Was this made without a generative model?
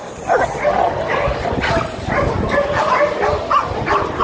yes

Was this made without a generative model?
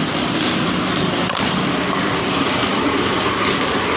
no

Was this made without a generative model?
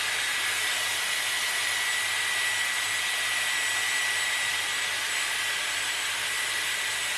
yes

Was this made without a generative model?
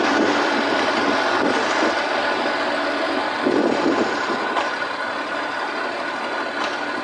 yes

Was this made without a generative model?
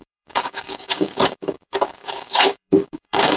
no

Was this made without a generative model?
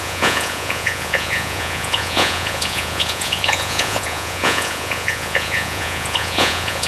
no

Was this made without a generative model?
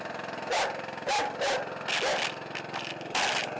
yes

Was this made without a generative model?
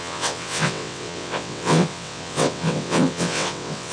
no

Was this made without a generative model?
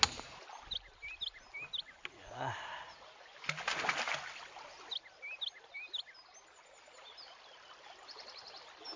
yes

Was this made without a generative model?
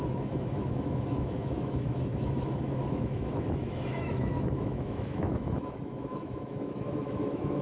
no